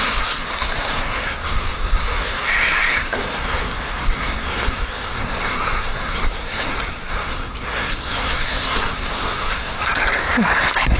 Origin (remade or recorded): remade